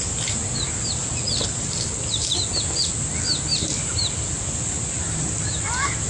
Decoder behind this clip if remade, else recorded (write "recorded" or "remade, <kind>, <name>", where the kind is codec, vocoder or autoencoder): recorded